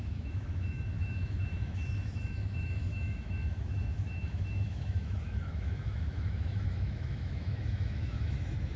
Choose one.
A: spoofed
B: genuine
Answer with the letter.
A